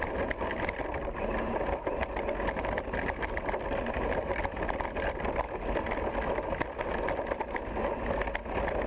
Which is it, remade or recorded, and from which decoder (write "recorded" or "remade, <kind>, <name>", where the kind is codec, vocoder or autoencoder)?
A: recorded